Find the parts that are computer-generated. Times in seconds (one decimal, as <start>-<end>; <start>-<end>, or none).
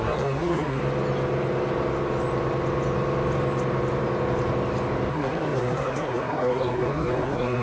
0.0-0.8; 5.1-7.6